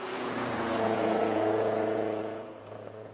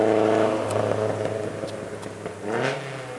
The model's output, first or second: first